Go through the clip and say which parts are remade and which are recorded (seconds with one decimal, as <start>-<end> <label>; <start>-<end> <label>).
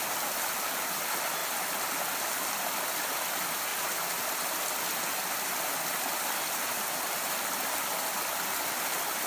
0.0-9.3 recorded